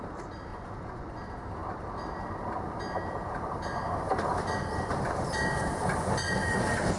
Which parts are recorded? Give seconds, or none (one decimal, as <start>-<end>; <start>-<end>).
0.0-0.5; 1.2-7.0